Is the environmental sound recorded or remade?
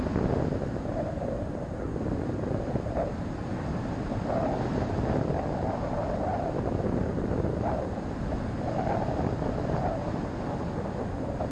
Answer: recorded